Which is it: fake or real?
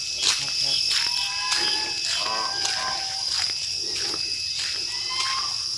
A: real